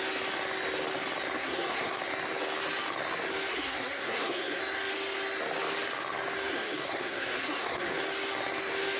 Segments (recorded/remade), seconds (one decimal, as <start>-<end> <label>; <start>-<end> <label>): 0.0-1.4 recorded; 1.4-2.0 remade; 2.0-3.5 recorded; 3.5-4.6 remade; 4.6-6.5 recorded; 6.5-7.9 remade; 7.9-9.0 recorded